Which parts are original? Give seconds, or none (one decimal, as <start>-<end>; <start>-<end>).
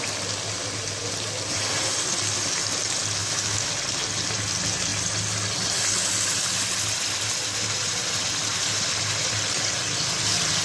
0.0-3.2; 3.7-10.6